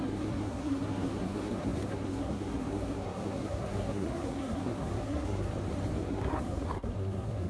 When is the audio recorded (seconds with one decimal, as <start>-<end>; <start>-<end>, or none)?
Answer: 5.5-6.1